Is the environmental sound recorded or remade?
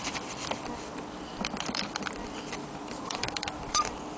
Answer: remade